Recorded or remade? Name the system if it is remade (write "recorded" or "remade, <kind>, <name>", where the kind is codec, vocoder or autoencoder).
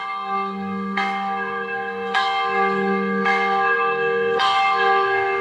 remade, codec, SNAC